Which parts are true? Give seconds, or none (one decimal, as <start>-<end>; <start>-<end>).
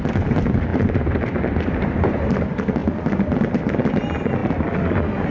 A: 0.0-5.3